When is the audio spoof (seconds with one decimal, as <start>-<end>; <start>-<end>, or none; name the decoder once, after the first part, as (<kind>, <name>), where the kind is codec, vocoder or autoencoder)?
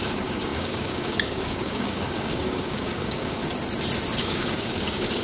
0.0-3.4 (codec, DAC); 4.2-5.2